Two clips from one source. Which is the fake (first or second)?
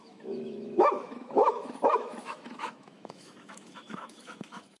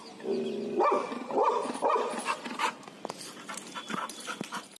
first